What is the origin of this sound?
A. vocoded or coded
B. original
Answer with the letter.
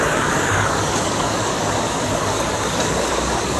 A